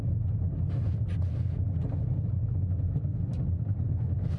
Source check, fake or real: real